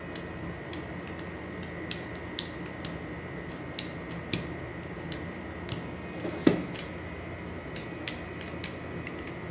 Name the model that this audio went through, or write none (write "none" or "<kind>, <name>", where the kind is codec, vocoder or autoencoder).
none